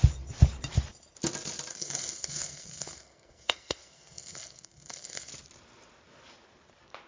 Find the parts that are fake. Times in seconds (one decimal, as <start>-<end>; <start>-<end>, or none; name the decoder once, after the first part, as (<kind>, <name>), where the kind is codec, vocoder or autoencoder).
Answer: 1.7-5.3 (codec, SNAC)